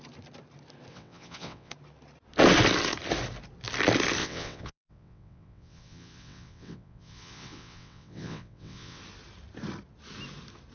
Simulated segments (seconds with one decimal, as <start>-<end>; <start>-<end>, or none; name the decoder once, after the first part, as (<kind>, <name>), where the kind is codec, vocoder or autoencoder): 0.9-1.7 (vocoder, WaveNeXt); 4.2-9.0